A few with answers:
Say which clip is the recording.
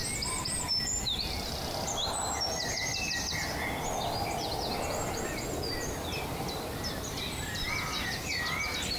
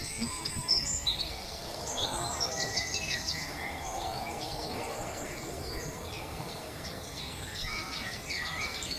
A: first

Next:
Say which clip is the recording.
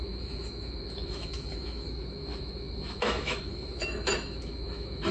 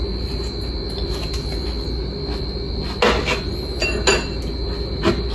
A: second